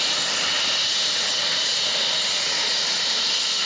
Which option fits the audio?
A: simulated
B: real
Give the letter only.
B